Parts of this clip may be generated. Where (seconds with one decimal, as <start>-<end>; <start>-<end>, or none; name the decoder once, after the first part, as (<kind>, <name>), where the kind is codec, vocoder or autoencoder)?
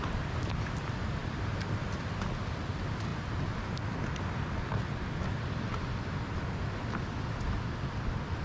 none